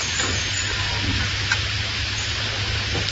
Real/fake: real